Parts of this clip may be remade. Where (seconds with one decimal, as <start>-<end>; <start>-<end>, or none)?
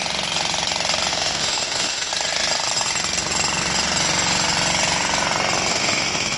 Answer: 1.1-2.1; 5.7-6.4